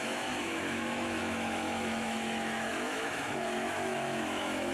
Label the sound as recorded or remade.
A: remade